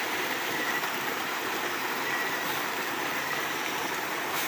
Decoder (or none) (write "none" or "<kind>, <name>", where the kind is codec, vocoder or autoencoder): vocoder, BigVGAN v2